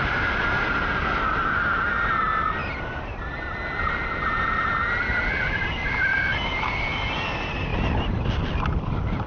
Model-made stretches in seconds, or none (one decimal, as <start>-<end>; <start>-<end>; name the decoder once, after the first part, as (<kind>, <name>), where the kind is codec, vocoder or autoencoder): none